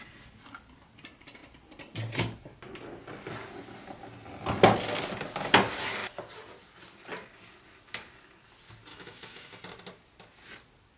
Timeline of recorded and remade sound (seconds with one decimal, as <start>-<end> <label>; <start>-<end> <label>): 0.0-8.9 recorded; 8.9-9.6 remade; 9.6-11.0 recorded